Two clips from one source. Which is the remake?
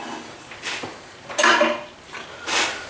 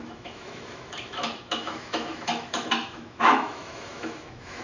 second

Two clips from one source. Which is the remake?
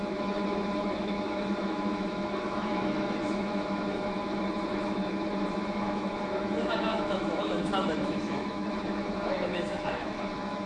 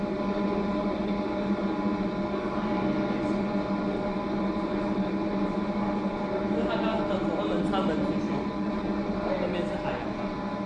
first